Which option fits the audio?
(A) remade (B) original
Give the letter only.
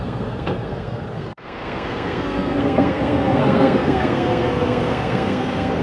A